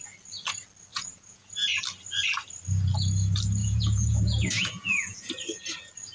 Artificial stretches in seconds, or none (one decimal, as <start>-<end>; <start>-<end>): 0.9-1.8; 3.6-5.3